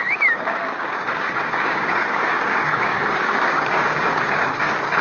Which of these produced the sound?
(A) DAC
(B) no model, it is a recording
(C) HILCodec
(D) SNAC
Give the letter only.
A